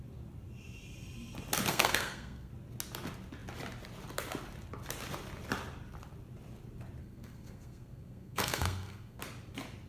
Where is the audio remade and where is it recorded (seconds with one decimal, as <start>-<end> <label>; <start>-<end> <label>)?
0.0-1.7 recorded; 1.7-2.5 remade; 2.5-7.0 recorded; 7.0-9.2 remade; 9.2-9.9 recorded